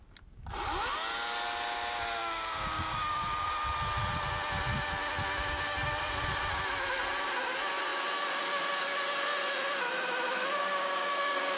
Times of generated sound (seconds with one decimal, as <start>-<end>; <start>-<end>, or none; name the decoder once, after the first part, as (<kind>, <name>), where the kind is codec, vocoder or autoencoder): 2.2-3.5 (codec, DAC); 10.6-11.6